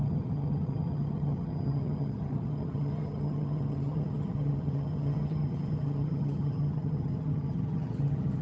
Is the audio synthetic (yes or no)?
yes